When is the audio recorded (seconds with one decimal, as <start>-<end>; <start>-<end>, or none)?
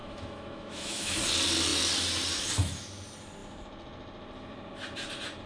1.2-5.5